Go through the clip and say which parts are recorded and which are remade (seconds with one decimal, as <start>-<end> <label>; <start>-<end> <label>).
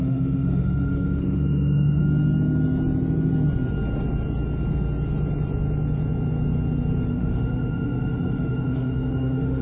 0.0-2.0 remade; 2.0-7.1 recorded; 7.1-9.6 remade